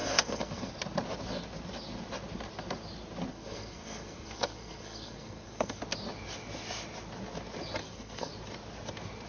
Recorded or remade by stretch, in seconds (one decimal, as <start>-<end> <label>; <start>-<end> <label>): 0.0-0.7 remade; 0.7-3.3 recorded; 3.3-5.8 remade; 5.8-7.8 recorded; 7.8-8.3 remade; 8.3-9.3 recorded